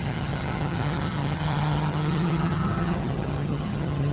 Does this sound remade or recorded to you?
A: remade